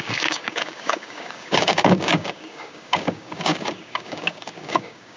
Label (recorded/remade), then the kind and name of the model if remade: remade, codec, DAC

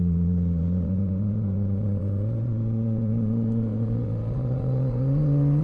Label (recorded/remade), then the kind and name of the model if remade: remade, vocoder, Vocos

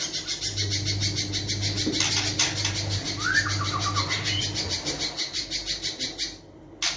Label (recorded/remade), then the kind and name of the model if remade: recorded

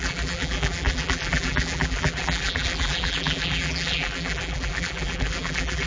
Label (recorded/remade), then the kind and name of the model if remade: remade, vocoder, BigVGAN v2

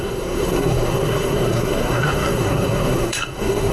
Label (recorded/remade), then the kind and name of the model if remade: remade, codec, SNAC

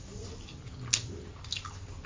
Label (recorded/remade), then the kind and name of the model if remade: recorded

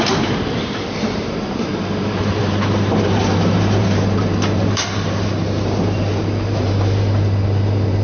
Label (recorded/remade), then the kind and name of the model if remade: remade, vocoder, BigVGAN v2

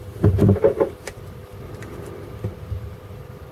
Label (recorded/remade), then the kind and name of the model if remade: recorded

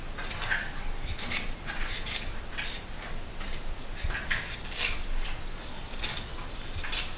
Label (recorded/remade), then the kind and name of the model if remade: recorded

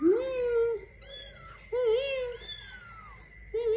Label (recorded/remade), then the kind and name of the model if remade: recorded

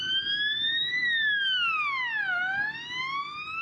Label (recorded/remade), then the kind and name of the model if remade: recorded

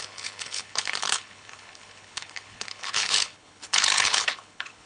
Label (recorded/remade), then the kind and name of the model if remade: remade, codec, HILCodec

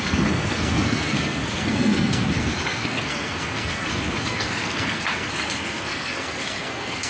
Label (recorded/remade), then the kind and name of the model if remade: remade, codec, SNAC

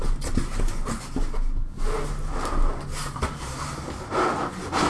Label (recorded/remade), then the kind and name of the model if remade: recorded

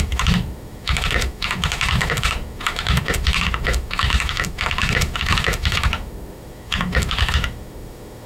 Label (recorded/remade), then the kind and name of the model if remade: remade, autoencoder, DAC-VAE